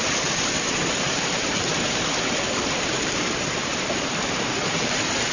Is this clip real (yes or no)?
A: no